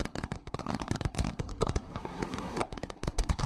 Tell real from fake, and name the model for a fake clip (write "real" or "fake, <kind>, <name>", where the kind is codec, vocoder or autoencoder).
fake, codec, SNAC